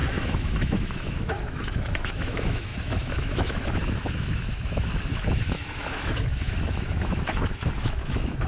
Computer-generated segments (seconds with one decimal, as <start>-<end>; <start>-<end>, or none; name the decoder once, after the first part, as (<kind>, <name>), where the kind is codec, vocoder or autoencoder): 0.0-8.5 (autoencoder, DAC-VAE)